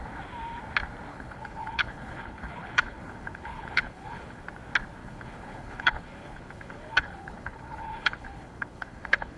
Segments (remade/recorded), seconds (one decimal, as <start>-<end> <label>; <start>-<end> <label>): 0.0-1.1 recorded; 1.1-4.4 remade; 4.4-5.0 recorded; 5.0-9.4 remade